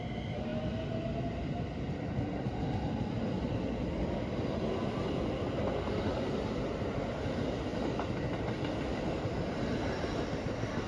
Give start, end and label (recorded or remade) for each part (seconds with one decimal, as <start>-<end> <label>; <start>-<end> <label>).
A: 0.0-10.9 recorded